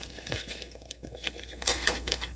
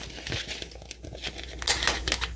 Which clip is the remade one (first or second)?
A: first